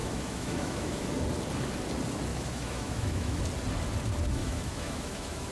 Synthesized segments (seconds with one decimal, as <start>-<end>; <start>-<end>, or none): 0.0-1.1; 2.3-3.4; 4.4-5.5